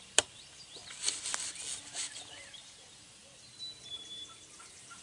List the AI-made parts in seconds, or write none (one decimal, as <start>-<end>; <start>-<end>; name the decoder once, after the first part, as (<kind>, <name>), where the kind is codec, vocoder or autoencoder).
0.0-0.8 (vocoder, BigVGAN v2); 2.3-3.2; 3.9-5.0